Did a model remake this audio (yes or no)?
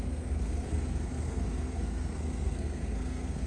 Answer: yes